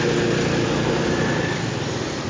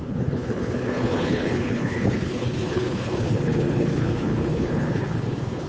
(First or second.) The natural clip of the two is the first